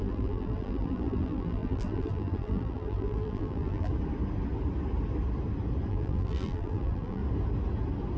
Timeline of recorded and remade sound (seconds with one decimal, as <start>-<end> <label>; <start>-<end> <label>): 0.0-3.9 remade; 3.9-5.9 recorded; 5.9-7.2 remade; 7.2-8.2 recorded